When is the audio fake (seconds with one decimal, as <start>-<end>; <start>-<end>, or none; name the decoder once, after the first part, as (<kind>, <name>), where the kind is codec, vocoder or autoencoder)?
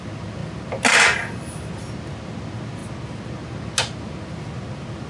none